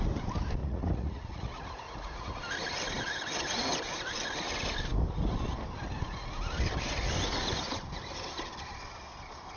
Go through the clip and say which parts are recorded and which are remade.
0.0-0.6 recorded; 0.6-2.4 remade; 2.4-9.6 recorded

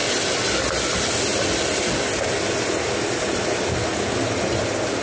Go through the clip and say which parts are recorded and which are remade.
0.0-5.0 recorded

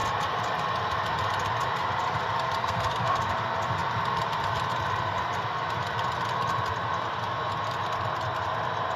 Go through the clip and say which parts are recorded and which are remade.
0.0-2.6 recorded; 2.6-3.2 remade; 3.2-9.0 recorded